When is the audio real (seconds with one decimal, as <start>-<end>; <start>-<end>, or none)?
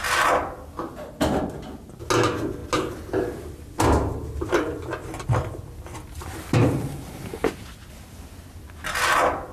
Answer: 0.0-9.5